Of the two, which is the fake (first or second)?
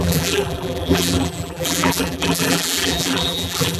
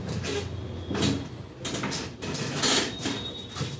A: first